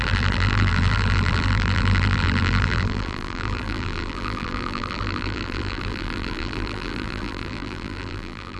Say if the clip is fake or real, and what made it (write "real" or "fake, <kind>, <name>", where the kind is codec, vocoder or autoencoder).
fake, vocoder, BigVGAN v2